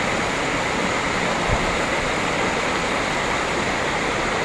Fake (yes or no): no